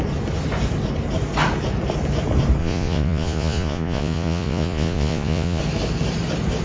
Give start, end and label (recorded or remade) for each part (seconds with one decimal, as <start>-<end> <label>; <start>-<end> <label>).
0.0-2.6 recorded; 2.6-5.6 remade; 5.6-6.6 recorded